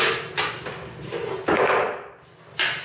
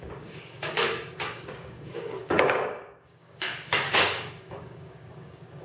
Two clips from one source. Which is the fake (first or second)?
second